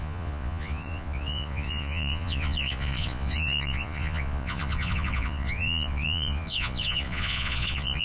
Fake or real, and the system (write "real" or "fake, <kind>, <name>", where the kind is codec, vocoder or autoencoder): fake, vocoder, Vocos